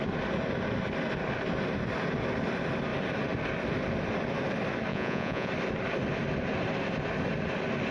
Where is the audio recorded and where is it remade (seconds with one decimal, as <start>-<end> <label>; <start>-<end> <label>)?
0.0-4.9 recorded; 4.9-5.5 remade; 5.5-7.9 recorded